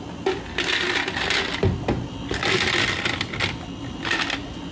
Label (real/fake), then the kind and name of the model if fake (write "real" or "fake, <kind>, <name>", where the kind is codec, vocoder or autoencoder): real